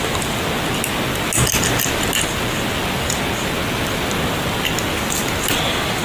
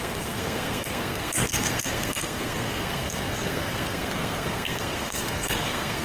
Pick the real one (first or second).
first